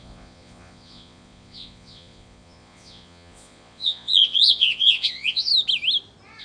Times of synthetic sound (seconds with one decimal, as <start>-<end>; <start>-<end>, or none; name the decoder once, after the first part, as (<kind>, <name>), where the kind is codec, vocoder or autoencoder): 0.0-5.5 (vocoder, Vocos)